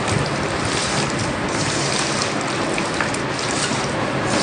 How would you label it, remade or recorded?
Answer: recorded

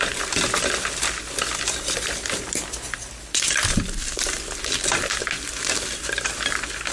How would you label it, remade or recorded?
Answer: recorded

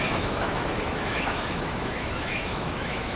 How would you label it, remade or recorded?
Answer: remade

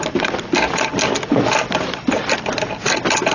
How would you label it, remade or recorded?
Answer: recorded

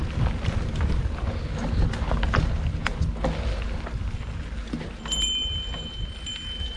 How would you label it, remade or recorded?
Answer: recorded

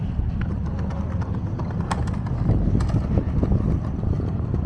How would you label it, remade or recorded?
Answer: recorded